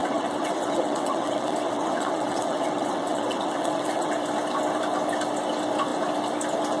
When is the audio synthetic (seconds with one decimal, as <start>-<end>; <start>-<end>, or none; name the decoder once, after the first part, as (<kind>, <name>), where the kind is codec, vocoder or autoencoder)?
0.0-4.1 (vocoder, WaveNeXt)